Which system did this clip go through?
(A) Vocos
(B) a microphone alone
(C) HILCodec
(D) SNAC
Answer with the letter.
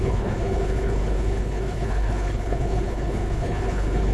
C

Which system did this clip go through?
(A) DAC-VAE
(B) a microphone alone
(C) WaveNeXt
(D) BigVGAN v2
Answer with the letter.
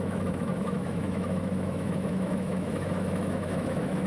A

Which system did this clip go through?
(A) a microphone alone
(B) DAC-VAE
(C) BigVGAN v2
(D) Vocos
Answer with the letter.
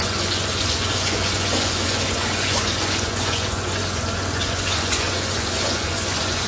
D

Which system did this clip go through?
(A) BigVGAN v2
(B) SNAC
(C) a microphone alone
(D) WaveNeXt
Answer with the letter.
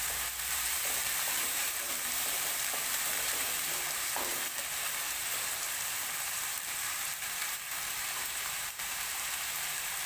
A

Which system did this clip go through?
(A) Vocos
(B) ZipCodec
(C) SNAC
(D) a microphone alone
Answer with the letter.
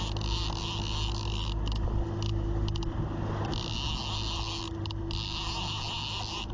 D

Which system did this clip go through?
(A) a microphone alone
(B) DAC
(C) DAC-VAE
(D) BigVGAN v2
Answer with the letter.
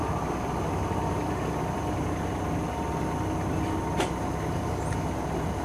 A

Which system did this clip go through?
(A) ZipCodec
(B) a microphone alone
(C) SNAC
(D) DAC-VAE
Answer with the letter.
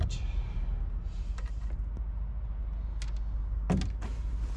B